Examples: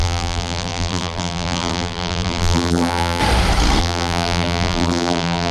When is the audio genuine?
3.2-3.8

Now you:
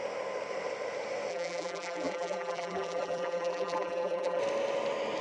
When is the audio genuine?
0.0-1.3; 4.4-5.2